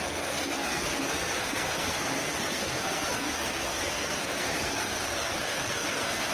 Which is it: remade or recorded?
remade